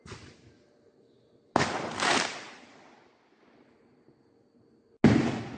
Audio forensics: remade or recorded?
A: recorded